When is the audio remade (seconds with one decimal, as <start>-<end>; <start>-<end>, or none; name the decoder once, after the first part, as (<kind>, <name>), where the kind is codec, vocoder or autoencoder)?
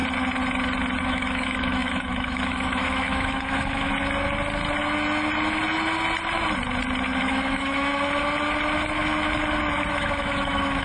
1.0-3.9 (autoencoder, DAC-VAE); 7.2-7.9; 9.9-10.8